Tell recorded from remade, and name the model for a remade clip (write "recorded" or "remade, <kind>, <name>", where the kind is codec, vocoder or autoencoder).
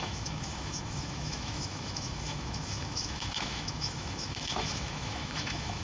remade, autoencoder, DAC-VAE